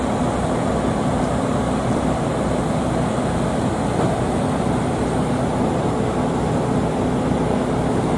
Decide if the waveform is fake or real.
real